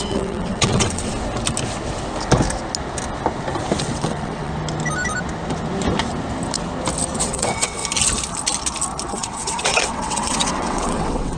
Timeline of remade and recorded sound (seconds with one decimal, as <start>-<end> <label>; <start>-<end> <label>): 0.0-1.1 remade; 1.1-3.8 recorded; 3.8-4.5 remade; 4.5-7.2 recorded; 7.2-7.8 remade; 7.8-9.1 recorded; 9.1-11.4 remade